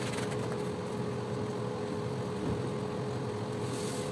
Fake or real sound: real